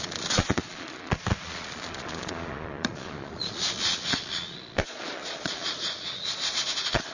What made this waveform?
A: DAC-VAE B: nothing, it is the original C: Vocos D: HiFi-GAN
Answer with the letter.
C